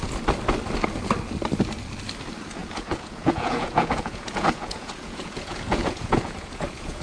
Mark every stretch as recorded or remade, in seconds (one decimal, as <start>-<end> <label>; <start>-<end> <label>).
0.0-2.6 recorded; 2.6-7.0 remade